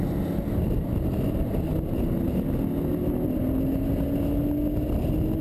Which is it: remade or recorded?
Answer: recorded